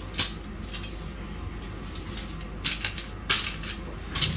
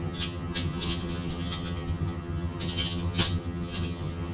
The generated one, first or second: second